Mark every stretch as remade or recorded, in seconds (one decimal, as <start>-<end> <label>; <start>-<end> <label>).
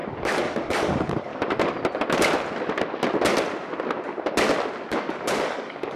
0.0-1.3 remade; 1.3-4.9 recorded; 4.9-6.0 remade